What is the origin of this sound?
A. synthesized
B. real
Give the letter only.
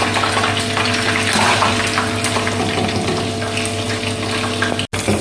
B